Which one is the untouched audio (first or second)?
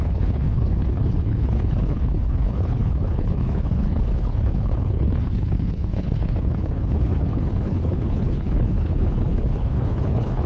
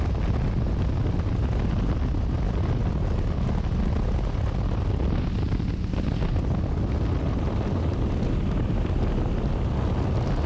second